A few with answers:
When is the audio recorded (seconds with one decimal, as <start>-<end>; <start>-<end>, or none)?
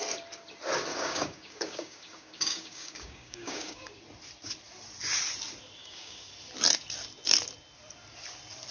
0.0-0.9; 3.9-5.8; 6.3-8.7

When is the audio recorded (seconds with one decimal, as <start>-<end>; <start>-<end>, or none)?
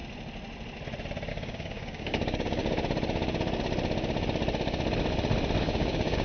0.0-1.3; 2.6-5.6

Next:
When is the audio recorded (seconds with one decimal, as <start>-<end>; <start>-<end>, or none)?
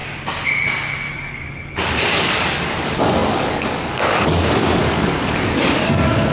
0.0-1.1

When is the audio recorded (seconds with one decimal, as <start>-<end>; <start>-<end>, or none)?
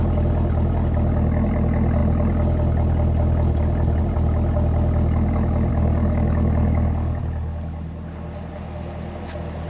0.0-5.7; 7.2-9.7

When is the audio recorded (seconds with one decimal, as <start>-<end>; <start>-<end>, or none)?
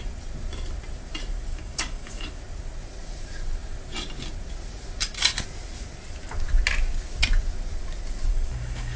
0.0-1.5; 2.4-8.3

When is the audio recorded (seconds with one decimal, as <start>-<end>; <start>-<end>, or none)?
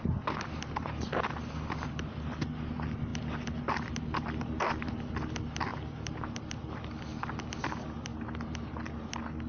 0.0-9.5